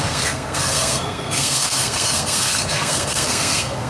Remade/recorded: remade